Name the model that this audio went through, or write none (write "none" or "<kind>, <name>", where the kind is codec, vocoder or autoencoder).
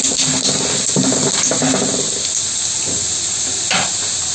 none